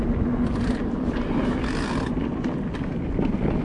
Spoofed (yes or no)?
no